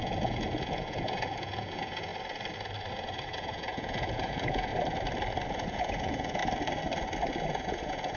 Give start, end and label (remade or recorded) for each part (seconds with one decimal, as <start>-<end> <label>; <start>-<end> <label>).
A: 0.0-2.1 remade; 2.1-2.9 recorded; 2.9-4.7 remade; 4.7-5.5 recorded; 5.5-6.4 remade; 6.4-7.3 recorded; 7.3-8.2 remade